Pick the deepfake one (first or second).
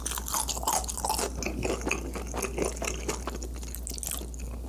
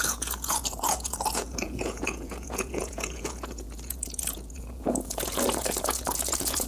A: second